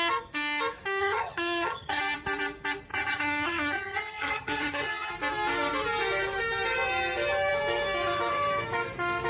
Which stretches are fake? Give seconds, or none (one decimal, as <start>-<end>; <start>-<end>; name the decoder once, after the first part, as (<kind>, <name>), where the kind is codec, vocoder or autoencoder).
1.0-2.0 (vocoder, HiFi-GAN); 2.9-5.1